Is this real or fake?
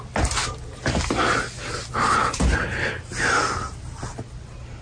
real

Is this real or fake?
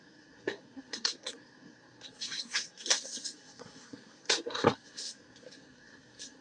fake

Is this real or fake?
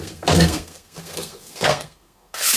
fake